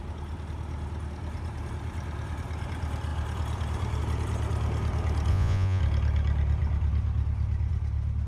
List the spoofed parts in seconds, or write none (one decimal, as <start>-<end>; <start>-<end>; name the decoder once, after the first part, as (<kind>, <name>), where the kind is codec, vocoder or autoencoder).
5.3-5.8 (vocoder, Vocos)